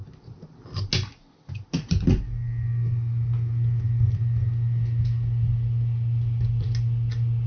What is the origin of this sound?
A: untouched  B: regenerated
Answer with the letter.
A